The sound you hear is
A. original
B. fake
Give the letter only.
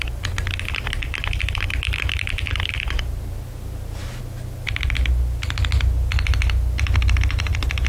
A